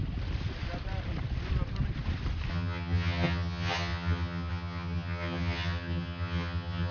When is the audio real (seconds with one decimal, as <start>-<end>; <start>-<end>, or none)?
0.0-2.5